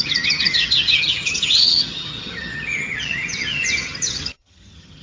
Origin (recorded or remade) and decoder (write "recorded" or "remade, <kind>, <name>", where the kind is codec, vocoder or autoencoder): remade, vocoder, HiFi-GAN